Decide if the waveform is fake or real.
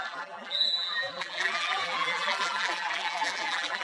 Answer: fake